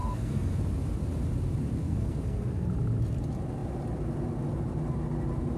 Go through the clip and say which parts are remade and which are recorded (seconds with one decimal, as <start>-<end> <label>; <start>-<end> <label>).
0.0-0.6 remade; 0.6-1.8 recorded; 1.8-2.7 remade; 2.7-5.6 recorded